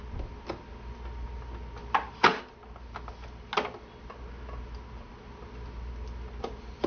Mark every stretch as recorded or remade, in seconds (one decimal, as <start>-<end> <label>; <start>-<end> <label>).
0.0-1.8 recorded; 1.8-2.4 remade; 2.4-6.9 recorded